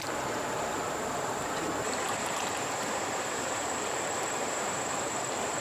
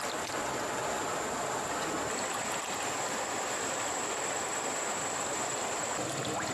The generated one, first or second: first